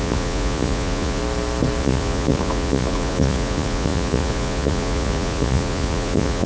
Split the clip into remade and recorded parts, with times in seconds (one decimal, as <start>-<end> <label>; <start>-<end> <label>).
0.0-1.2 remade; 1.2-1.8 recorded; 1.8-6.5 remade